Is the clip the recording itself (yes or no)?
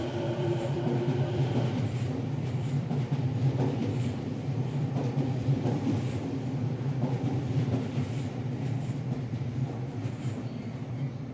no